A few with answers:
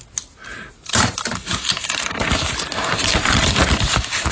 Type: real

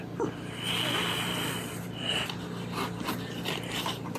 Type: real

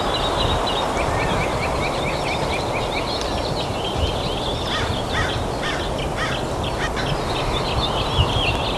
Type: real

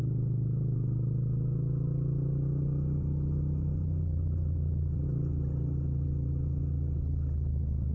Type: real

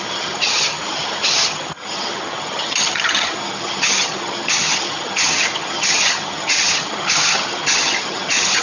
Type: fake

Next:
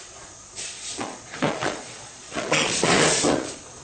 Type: fake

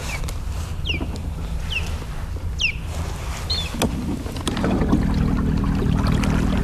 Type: real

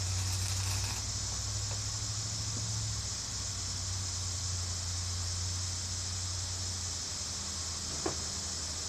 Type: real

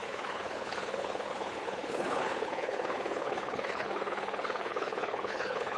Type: fake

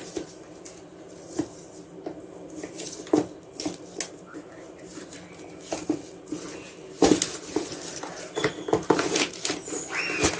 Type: real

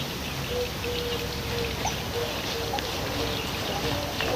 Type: real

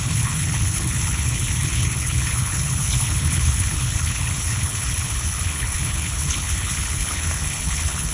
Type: fake